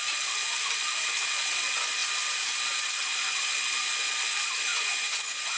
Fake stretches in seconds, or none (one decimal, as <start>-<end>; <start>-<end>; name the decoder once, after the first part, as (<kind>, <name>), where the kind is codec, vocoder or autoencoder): 4.7-5.6 (vocoder, Vocos)